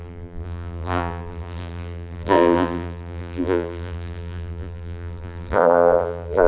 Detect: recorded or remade remade